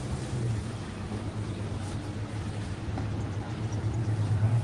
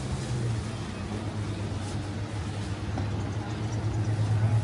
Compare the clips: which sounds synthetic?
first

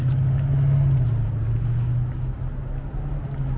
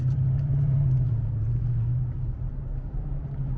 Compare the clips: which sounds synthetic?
second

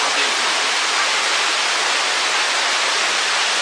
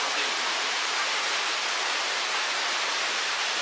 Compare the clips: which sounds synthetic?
second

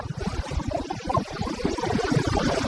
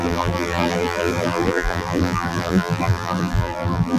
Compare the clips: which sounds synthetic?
second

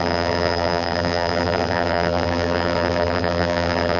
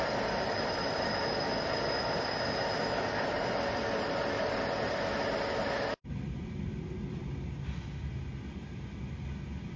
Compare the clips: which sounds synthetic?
first